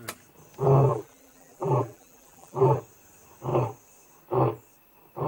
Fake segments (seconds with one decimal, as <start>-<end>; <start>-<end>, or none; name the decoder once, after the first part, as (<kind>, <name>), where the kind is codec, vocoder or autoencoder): 0.9-2.8 (vocoder, BigVGAN v2)